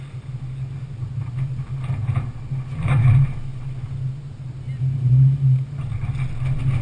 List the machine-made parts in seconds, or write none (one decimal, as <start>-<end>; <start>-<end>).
none